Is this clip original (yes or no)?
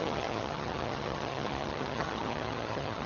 no